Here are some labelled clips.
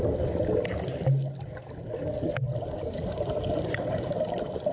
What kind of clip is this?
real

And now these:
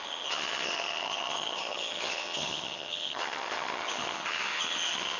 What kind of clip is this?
fake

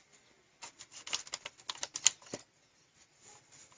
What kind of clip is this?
real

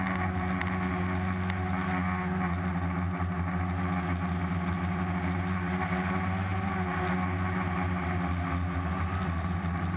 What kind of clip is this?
real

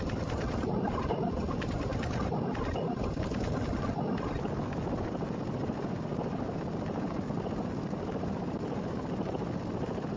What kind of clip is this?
real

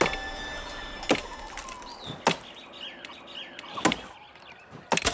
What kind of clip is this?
real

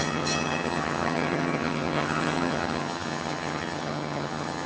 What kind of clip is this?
fake